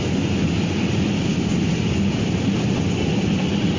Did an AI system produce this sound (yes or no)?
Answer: no